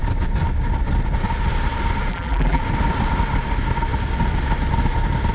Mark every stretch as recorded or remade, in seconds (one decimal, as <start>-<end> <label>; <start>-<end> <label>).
0.0-2.1 recorded; 2.1-2.6 remade; 2.6-5.3 recorded